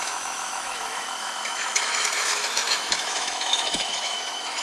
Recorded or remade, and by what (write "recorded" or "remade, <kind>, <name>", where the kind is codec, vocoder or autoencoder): remade, autoencoder, DAC-VAE